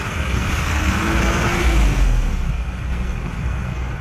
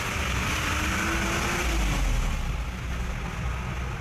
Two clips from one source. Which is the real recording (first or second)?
second